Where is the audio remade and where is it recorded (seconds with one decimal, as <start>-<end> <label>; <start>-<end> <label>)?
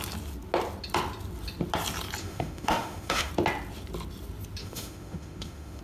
0.0-2.2 recorded; 2.2-3.3 remade; 3.3-4.6 recorded; 4.6-5.8 remade